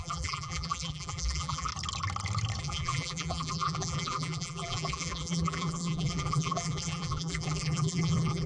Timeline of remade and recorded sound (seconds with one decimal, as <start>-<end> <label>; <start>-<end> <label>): 0.0-1.7 remade; 1.7-2.6 recorded; 2.6-8.5 remade